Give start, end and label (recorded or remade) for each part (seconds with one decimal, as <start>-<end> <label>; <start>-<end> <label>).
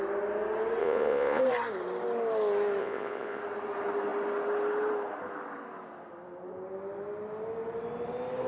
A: 0.0-0.8 recorded; 0.8-1.4 remade; 1.4-2.8 recorded; 2.8-3.4 remade; 3.4-8.5 recorded